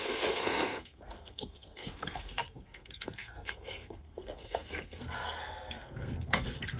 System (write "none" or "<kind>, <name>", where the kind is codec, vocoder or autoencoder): codec, SNAC